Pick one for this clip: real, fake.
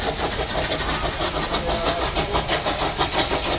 real